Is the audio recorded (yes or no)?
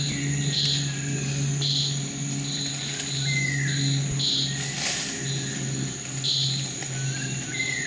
yes